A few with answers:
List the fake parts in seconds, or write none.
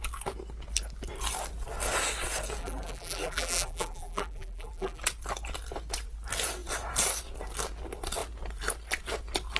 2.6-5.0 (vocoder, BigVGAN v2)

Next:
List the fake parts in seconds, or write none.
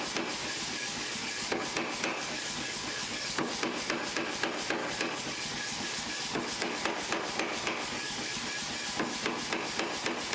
0.4-1.6 (codec, DAC); 2.1-3.5; 4.8-6.8; 7.5-8.4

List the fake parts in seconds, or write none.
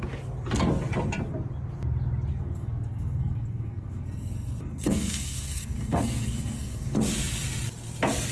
2.3-7.0 (codec, SNAC)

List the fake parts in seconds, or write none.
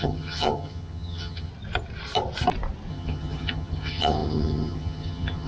0.0-1.5 (vocoder, HiFi-GAN); 2.9-5.5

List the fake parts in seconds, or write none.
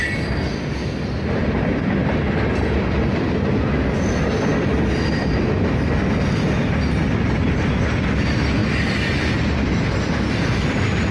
none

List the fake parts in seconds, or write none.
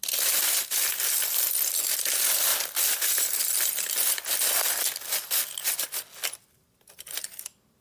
none